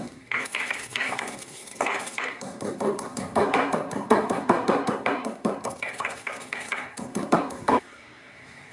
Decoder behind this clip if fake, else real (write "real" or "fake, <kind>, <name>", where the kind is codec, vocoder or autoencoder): fake, codec, SNAC